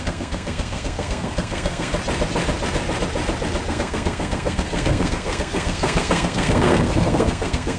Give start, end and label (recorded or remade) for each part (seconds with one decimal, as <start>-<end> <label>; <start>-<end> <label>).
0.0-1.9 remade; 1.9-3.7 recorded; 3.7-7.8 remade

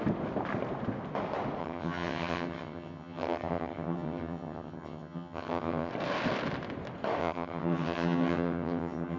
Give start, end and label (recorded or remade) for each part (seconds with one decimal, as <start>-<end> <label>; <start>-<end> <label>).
0.0-1.6 recorded; 1.6-5.9 remade; 5.9-7.2 recorded; 7.2-9.2 remade

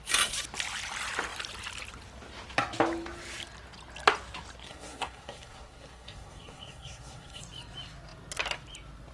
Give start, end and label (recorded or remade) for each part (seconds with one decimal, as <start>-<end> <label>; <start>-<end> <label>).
0.0-4.7 recorded; 4.7-7.4 remade; 7.4-9.1 recorded

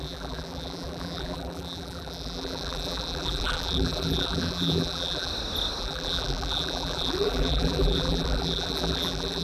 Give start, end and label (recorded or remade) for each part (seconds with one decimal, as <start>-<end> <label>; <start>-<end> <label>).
0.0-5.3 remade; 5.3-5.8 recorded; 5.8-9.4 remade

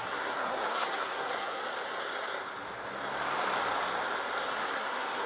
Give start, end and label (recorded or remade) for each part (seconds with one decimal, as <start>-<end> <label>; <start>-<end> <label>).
0.0-1.6 remade; 1.6-4.5 recorded; 4.5-5.3 remade

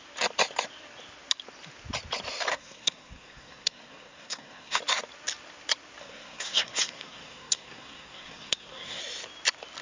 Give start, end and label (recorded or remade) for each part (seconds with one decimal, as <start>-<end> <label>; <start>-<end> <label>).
0.0-2.5 recorded; 2.5-4.8 remade; 4.8-6.0 recorded; 6.0-9.0 remade; 9.0-9.8 recorded